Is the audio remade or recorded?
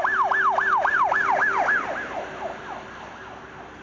recorded